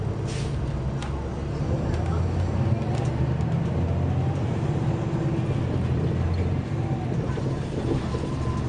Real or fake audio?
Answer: real